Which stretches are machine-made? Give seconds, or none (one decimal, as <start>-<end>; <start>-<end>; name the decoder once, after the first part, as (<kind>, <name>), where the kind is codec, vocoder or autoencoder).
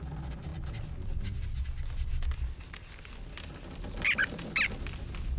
none